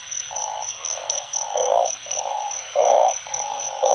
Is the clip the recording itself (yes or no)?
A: no